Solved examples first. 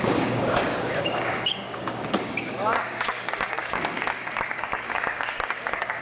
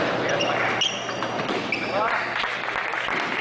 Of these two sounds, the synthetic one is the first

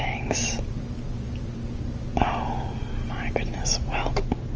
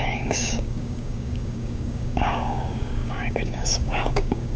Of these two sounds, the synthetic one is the second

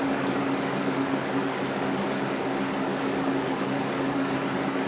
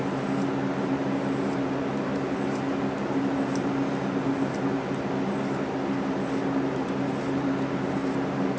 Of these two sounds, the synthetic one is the first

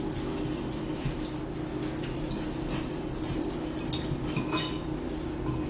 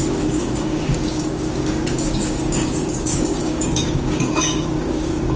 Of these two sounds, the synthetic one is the second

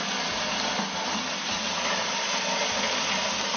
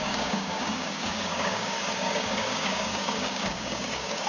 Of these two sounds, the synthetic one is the second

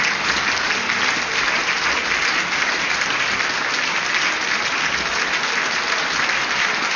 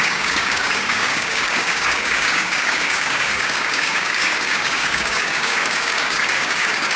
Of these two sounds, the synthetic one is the second